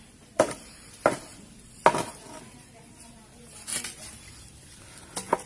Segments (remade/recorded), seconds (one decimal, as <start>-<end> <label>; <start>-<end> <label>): 0.0-5.5 recorded